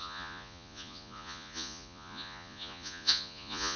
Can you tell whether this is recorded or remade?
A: remade